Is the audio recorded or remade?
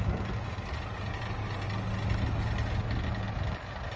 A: recorded